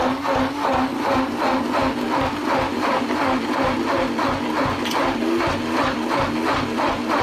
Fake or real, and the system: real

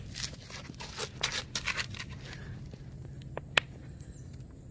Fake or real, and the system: real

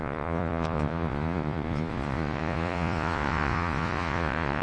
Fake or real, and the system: fake, vocoder, Vocos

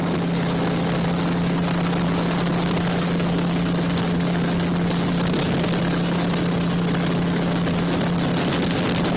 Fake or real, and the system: real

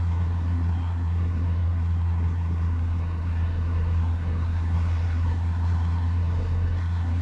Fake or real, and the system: fake, codec, SNAC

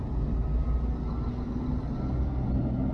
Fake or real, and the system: real